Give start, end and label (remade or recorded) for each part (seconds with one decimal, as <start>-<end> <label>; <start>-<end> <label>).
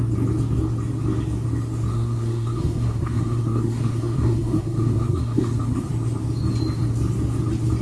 0.0-1.9 recorded; 1.9-5.9 remade; 5.9-7.8 recorded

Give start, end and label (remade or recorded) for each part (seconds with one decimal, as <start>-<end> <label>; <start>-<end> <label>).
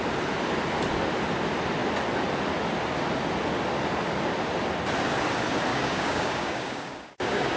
0.0-5.7 recorded; 5.7-7.6 remade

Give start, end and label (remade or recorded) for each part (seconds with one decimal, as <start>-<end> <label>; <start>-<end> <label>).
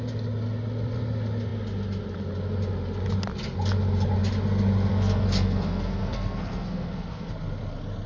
0.0-4.9 recorded; 4.9-7.3 remade; 7.3-8.1 recorded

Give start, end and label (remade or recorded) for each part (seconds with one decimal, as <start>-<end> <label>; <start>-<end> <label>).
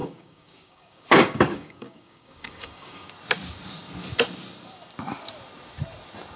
0.0-3.1 remade; 3.1-6.4 recorded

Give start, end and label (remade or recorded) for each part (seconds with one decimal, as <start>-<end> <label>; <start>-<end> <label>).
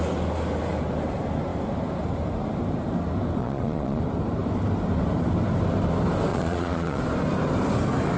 0.0-3.4 recorded; 3.4-4.0 remade; 4.0-6.3 recorded; 6.3-7.0 remade; 7.0-8.2 recorded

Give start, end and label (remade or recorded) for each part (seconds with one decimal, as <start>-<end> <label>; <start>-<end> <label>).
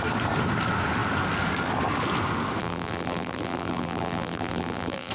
0.0-2.6 recorded; 2.6-5.1 remade